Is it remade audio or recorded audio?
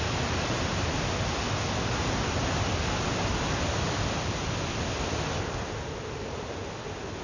recorded